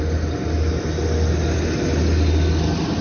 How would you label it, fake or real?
real